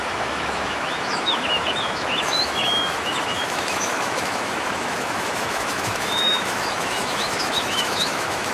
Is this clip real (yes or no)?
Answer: no